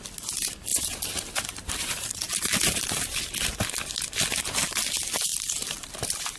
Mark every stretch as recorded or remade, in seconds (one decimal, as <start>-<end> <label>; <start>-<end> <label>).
0.0-0.7 recorded; 0.7-3.2 remade; 3.2-5.3 recorded; 5.3-6.4 remade